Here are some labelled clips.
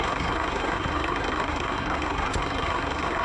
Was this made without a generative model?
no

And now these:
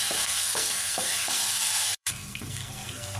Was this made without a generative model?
no